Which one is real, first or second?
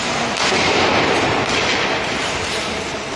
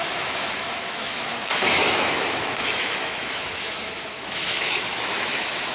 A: first